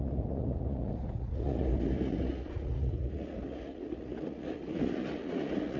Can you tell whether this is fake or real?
fake